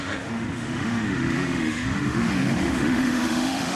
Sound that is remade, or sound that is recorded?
remade